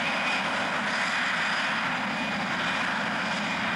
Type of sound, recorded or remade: recorded